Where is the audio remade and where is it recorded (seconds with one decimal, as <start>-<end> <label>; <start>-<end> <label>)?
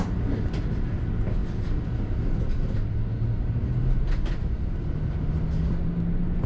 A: 0.0-6.5 recorded